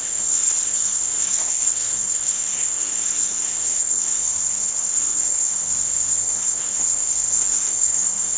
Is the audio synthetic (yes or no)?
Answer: yes